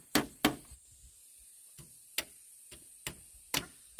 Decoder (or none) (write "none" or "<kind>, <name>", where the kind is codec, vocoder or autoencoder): none